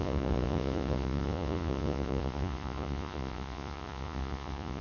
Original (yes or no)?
no